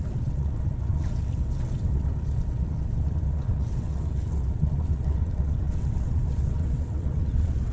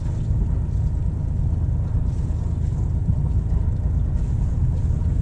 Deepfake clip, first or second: first